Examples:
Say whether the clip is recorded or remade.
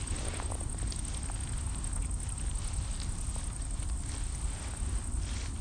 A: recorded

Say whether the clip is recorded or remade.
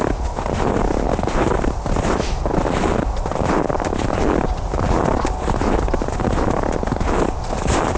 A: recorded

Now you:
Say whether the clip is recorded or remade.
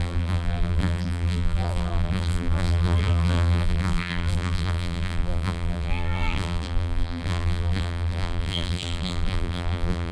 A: remade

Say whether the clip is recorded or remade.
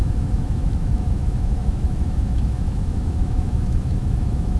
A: remade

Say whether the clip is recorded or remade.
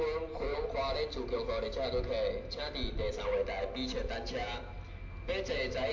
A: recorded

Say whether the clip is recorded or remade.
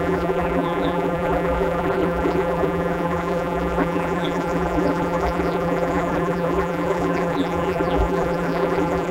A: remade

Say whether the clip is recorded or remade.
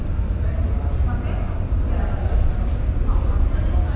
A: recorded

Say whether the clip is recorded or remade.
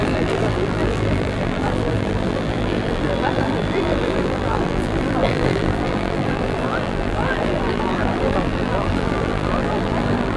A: remade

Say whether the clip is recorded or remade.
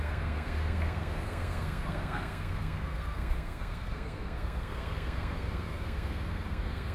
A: remade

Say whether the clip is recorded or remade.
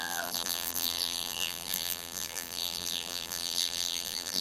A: remade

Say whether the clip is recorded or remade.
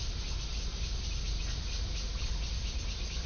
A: recorded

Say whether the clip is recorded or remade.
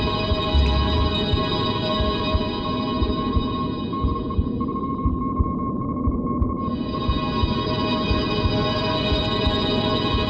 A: recorded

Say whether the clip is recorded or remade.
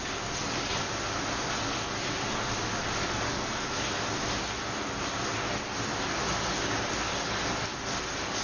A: recorded